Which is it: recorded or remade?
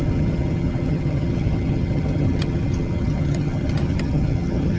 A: remade